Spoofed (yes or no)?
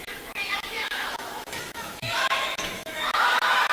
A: yes